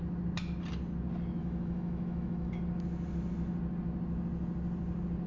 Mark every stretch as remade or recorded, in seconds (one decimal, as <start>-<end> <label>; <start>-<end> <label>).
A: 0.0-1.4 recorded; 1.4-2.5 remade; 2.5-5.3 recorded